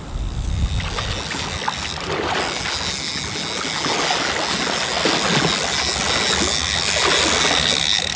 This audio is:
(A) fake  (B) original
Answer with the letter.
B